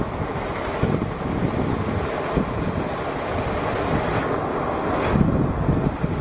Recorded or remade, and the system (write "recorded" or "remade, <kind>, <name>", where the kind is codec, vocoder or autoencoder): recorded